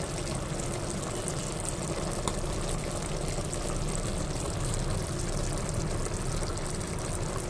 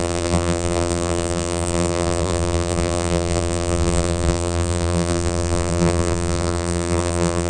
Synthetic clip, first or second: second